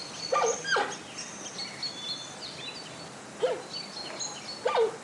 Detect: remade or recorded recorded